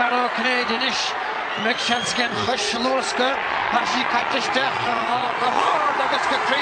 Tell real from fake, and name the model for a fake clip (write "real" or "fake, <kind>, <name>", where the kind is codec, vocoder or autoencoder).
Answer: fake, vocoder, Vocos